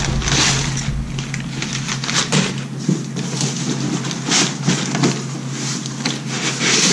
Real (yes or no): yes